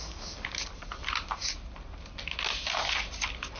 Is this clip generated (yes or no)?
no